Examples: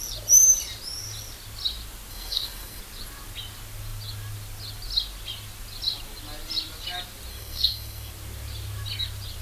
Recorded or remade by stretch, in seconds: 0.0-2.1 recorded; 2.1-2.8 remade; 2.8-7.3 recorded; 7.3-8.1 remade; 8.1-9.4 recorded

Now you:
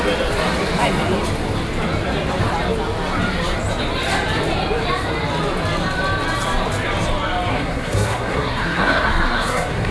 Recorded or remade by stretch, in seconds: 0.0-7.5 recorded; 7.5-9.9 remade